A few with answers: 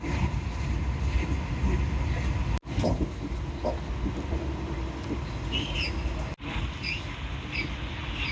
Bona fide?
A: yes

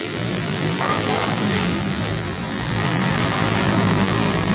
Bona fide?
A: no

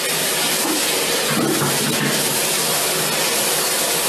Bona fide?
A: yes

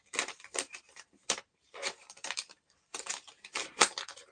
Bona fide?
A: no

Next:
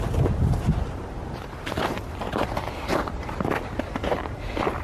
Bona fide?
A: no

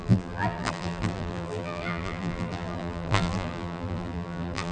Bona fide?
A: no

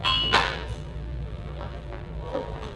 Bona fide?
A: no